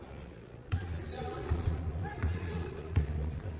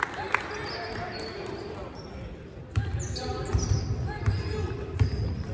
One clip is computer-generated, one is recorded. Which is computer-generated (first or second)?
first